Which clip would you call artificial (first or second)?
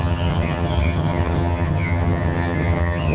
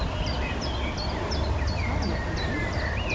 first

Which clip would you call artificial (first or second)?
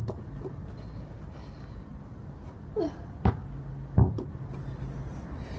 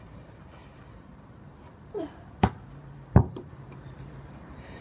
second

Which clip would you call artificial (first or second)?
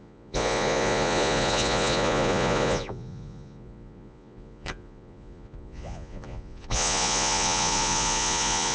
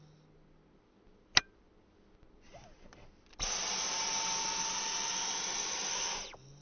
first